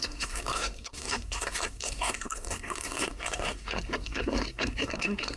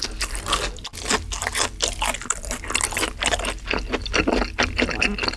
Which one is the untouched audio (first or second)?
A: second